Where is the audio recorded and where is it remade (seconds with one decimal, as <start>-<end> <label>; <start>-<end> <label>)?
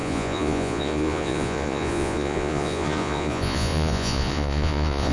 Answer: 0.0-5.1 remade